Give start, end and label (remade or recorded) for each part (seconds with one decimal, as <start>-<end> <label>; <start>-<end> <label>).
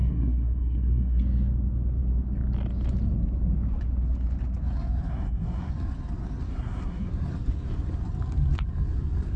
0.0-1.2 remade; 1.2-5.1 recorded; 5.1-5.7 remade; 5.7-6.5 recorded; 6.5-7.1 remade; 7.1-9.4 recorded